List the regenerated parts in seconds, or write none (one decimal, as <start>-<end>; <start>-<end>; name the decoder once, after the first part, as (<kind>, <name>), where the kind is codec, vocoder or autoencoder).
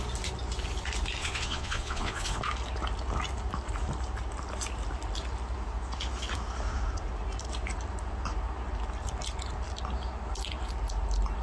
1.2-2.4 (vocoder, Vocos)